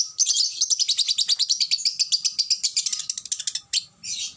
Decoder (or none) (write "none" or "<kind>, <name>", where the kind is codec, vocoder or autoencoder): none